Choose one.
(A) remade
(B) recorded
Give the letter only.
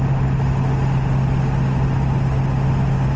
B